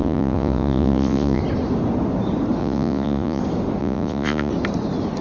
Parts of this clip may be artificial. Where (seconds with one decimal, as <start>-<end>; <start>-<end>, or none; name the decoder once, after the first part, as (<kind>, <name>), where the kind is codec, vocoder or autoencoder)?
0.0-1.4 (vocoder, Vocos); 2.6-3.4; 3.8-4.5